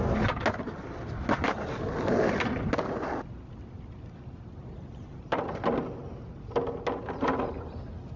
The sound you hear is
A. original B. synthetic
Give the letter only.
A